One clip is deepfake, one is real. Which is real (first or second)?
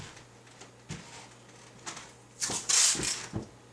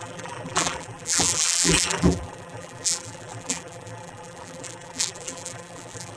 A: first